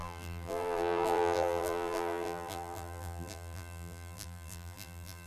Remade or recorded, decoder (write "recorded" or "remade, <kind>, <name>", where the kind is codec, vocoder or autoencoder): remade, vocoder, BigVGAN v2